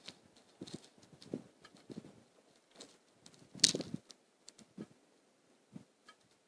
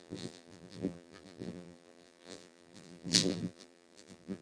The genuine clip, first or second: first